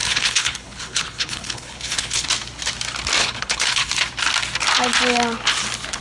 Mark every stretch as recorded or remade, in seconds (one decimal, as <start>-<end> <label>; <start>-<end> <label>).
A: 0.0-2.3 remade; 2.3-3.2 recorded; 3.2-3.9 remade; 3.9-6.0 recorded